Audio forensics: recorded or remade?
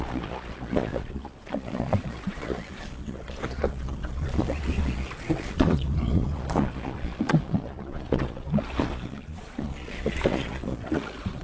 remade